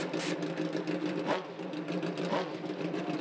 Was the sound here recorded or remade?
recorded